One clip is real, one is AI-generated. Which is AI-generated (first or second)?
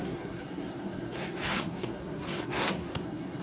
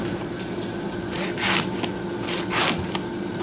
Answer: first